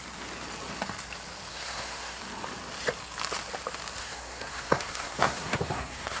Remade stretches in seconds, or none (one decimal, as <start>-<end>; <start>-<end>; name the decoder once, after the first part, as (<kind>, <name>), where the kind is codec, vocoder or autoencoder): 1.5-2.2 (codec, SNAC); 4.0-6.2